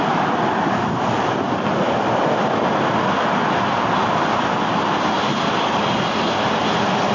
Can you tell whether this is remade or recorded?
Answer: recorded